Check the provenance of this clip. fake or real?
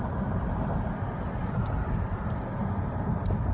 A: real